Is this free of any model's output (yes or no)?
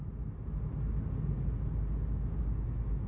yes